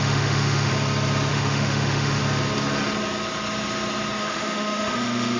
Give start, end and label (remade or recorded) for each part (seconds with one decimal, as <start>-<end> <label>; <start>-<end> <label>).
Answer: 0.0-0.7 remade; 0.7-1.3 recorded; 1.3-2.2 remade; 2.2-4.2 recorded; 4.2-5.4 remade